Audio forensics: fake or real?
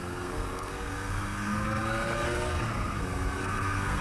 fake